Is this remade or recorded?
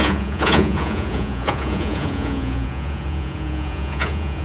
remade